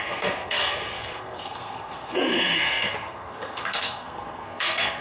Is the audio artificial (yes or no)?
yes